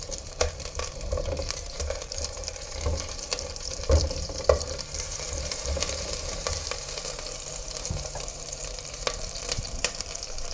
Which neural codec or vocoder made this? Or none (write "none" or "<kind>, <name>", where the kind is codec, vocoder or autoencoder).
vocoder, BigVGAN v2